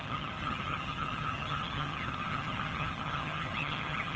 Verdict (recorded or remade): remade